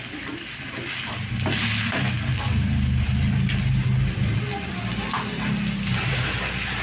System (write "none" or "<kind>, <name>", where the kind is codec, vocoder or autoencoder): none